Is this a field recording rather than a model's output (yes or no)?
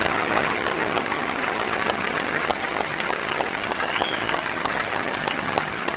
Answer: no